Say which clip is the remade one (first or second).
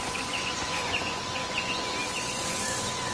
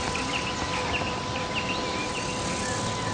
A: first